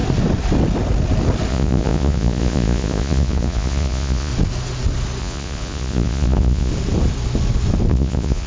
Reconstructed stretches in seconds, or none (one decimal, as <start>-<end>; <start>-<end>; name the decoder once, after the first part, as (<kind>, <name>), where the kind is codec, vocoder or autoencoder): 1.5-4.3 (vocoder, Vocos); 5.2-6.7; 7.9-8.5